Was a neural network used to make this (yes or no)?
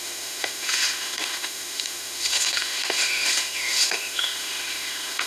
yes